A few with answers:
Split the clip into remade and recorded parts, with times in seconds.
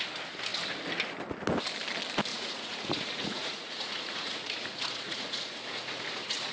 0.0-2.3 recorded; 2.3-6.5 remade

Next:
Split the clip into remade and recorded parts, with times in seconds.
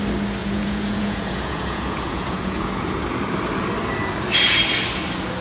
0.0-0.4 recorded; 0.4-3.0 remade; 3.0-5.4 recorded